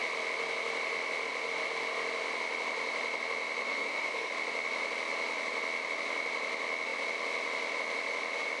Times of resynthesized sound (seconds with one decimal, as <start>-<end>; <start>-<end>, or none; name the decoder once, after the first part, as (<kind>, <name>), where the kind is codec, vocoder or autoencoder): 3.6-4.3 (codec, SNAC)